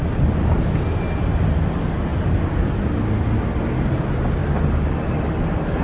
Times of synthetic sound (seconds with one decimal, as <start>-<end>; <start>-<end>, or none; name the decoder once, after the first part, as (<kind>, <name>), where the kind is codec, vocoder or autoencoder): none